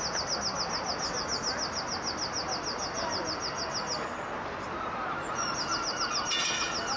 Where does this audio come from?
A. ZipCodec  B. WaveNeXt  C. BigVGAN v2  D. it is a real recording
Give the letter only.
D